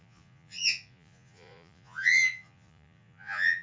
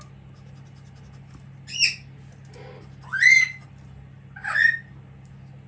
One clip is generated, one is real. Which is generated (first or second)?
first